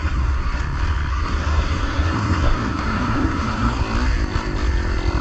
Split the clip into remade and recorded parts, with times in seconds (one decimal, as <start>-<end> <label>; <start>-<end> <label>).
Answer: 0.0-0.6 remade; 0.6-1.1 recorded; 1.1-3.8 remade; 3.8-5.2 recorded